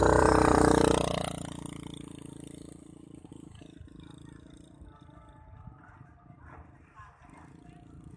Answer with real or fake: fake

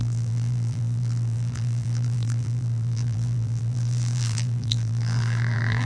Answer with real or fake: fake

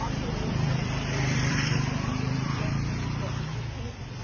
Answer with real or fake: fake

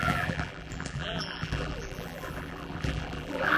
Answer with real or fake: fake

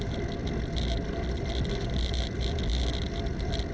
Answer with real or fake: real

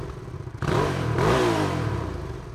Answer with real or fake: fake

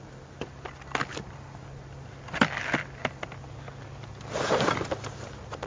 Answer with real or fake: real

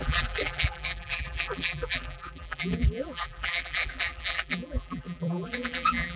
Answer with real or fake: fake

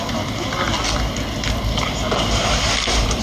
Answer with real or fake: fake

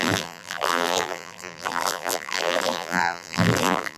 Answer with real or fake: fake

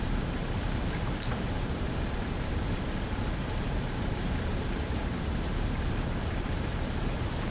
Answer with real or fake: fake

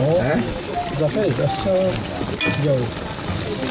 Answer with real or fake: real